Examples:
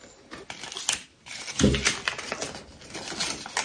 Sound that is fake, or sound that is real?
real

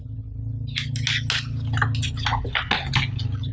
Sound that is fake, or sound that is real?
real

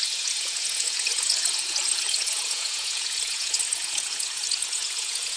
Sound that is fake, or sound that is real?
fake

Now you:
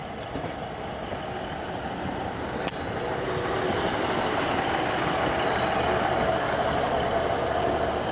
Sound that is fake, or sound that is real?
real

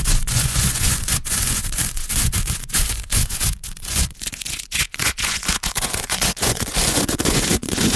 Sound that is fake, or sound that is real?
fake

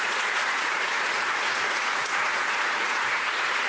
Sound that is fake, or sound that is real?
fake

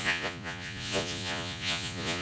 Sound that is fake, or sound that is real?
fake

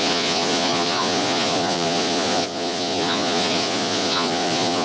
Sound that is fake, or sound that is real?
fake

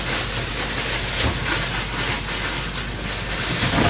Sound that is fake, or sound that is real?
real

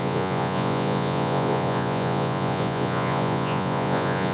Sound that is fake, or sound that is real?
fake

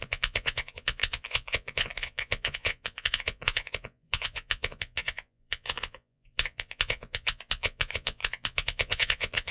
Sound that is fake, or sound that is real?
fake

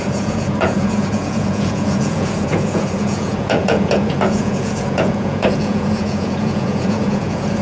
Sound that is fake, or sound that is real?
fake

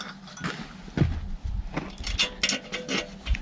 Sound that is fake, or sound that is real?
real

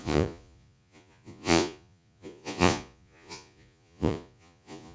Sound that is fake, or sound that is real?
fake